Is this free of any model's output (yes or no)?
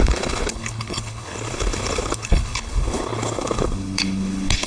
no